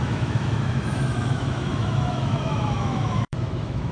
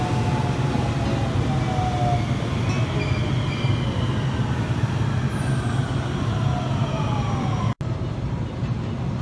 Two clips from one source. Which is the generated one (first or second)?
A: first